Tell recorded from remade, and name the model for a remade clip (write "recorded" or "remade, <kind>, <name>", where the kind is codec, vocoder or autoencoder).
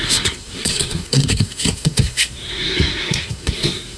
remade, codec, SNAC